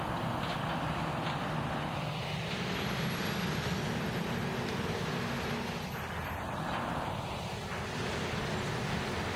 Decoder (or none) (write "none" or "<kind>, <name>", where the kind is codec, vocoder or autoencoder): none